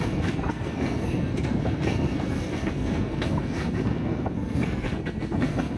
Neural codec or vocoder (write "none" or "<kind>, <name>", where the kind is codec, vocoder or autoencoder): codec, SNAC